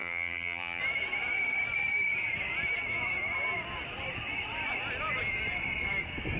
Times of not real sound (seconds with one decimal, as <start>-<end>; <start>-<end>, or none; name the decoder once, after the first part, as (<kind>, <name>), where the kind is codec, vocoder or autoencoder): 0.0-0.8 (vocoder, BigVGAN v2)